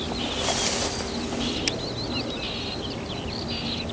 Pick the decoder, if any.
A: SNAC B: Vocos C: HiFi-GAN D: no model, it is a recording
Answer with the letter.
D